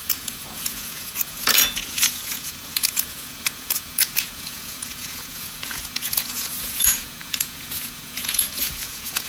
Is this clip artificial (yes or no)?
yes